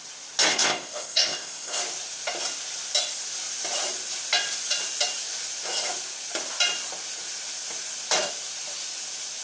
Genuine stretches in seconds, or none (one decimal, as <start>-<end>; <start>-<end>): 0.0-0.5; 1.8-9.4